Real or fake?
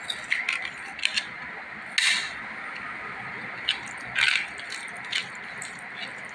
real